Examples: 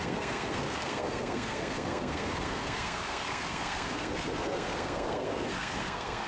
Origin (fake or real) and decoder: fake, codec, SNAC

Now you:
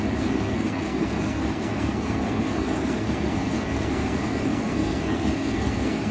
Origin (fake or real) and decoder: fake, codec, SNAC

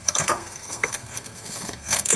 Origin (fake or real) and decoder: fake, codec, SNAC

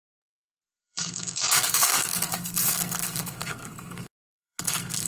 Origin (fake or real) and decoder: fake, codec, SNAC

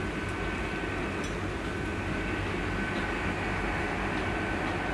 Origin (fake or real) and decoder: real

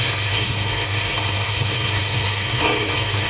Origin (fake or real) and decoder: fake, codec, SNAC